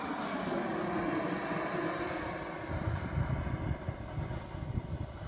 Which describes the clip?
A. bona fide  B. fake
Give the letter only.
A